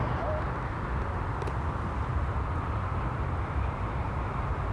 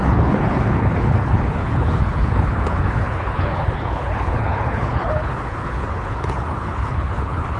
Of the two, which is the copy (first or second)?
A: second